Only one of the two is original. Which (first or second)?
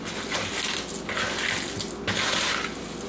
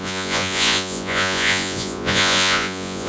first